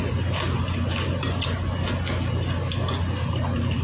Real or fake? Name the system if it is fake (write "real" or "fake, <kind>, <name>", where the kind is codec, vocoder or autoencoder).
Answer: real